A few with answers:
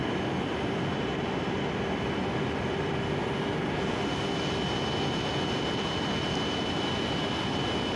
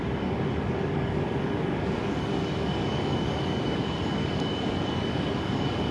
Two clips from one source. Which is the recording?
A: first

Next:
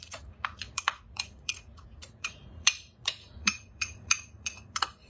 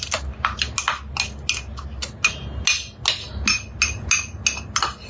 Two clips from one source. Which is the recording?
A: second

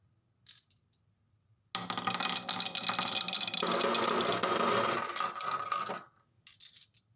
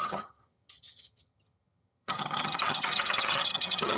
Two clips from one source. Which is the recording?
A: first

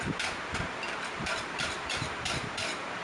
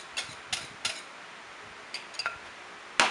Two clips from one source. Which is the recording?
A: second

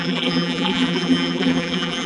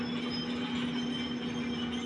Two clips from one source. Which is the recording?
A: second